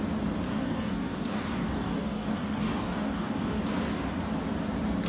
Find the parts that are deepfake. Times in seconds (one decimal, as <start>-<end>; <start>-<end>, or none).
0.5-3.6